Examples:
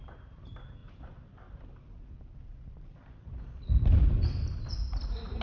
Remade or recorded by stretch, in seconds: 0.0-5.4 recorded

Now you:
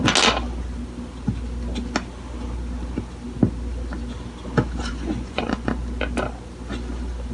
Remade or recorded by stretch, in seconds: 0.0-4.9 recorded; 4.9-5.8 remade; 5.8-7.3 recorded

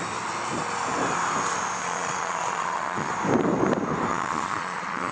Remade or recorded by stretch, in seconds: 0.0-1.8 recorded; 1.8-3.1 remade; 3.1-4.1 recorded; 4.1-5.1 remade